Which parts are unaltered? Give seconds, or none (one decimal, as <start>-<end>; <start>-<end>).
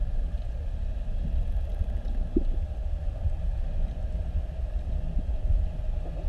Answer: 0.0-6.3